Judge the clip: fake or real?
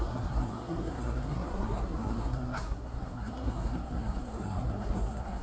fake